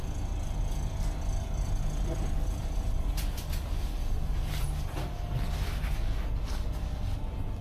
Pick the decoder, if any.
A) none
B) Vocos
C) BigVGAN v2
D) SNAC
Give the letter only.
A